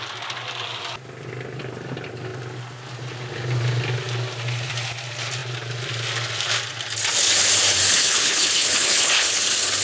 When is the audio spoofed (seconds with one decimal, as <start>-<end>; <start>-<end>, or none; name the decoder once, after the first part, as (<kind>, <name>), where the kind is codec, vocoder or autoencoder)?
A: 8.0-9.4 (codec, HILCodec)